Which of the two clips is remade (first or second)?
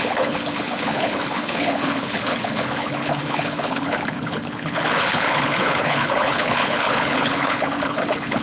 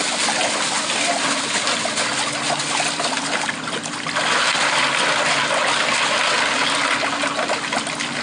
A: first